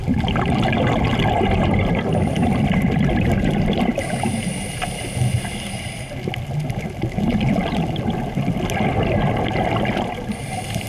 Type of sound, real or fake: real